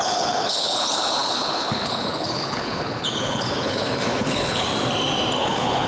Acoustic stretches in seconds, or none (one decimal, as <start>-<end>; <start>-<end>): 4.7-5.4